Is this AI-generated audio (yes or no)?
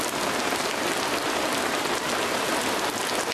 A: no